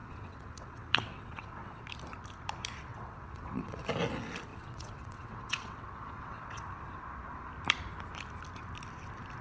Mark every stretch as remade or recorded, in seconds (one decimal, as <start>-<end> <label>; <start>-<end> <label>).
0.0-1.8 remade; 1.8-2.9 recorded; 2.9-3.8 remade; 3.8-4.5 recorded; 4.5-6.6 remade; 6.6-9.4 recorded